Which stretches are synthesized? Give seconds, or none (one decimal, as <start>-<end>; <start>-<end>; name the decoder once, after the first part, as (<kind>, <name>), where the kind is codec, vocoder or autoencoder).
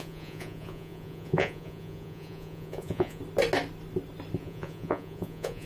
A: 0.0-3.2 (vocoder, Vocos); 4.4-5.7